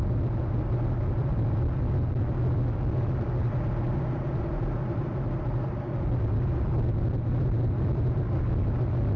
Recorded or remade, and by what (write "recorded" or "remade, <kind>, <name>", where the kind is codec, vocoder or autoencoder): recorded